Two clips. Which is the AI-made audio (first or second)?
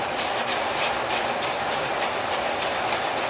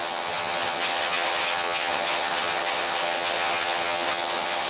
second